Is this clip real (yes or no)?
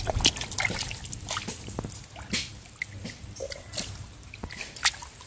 yes